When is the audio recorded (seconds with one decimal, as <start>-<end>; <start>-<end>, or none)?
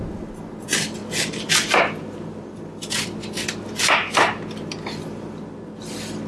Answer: 0.0-6.3